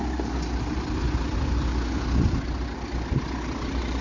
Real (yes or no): yes